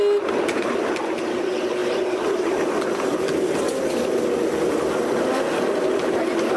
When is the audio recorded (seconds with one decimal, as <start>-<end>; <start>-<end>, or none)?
0.0-6.6